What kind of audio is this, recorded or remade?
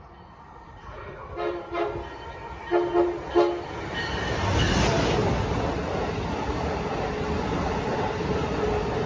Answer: recorded